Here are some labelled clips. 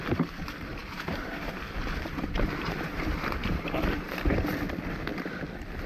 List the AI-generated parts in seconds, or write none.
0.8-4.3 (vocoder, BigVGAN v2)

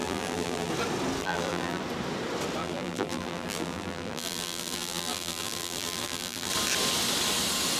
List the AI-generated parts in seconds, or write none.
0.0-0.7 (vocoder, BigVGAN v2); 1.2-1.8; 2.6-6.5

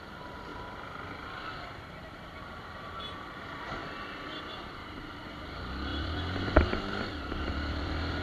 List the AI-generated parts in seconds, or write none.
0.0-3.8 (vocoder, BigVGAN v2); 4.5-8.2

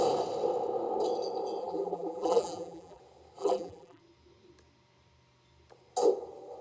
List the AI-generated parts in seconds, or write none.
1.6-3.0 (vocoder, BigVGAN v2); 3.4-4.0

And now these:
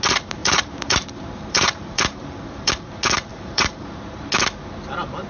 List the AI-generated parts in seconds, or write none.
0.4-2.7 (vocoder, BigVGAN v2); 3.3-3.9

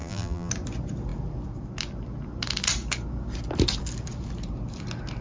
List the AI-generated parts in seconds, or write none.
0.0-0.5 (vocoder, BigVGAN v2)